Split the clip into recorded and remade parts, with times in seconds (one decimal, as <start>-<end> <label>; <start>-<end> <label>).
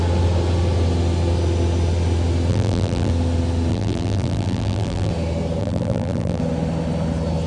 0.0-2.5 recorded; 2.5-3.1 remade; 3.1-3.7 recorded; 3.7-5.1 remade; 5.1-5.6 recorded; 5.6-6.4 remade; 6.4-7.5 recorded